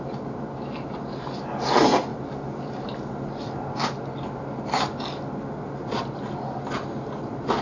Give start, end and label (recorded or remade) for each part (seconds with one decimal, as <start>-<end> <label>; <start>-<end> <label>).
0.0-7.6 recorded